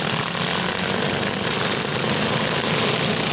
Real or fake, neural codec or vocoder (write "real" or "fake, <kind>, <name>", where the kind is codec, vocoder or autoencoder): real